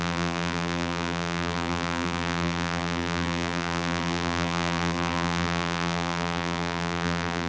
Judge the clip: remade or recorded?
remade